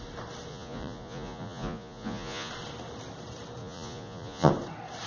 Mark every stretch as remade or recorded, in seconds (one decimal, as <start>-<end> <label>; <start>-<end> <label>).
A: 0.0-0.5 recorded; 0.5-2.5 remade; 2.5-3.6 recorded; 3.6-4.5 remade; 4.5-5.1 recorded